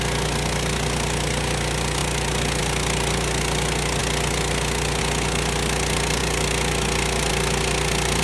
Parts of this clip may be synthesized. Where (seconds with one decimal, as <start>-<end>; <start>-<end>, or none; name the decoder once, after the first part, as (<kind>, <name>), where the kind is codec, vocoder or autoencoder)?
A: none